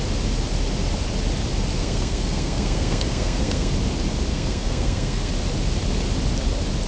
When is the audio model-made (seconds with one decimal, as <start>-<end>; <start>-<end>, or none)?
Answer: 1.8-3.7; 4.3-5.3